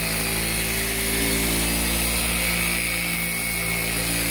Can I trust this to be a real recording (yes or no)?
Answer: yes